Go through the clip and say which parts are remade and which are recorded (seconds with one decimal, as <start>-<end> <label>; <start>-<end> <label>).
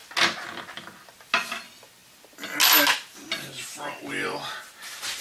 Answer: 0.0-5.2 recorded